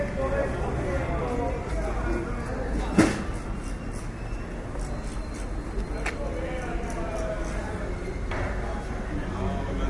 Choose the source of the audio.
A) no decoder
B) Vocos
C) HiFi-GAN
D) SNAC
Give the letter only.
A